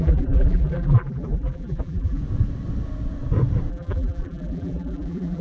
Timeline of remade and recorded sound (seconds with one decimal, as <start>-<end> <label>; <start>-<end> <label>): 0.0-2.2 remade; 2.2-3.7 recorded; 3.7-5.4 remade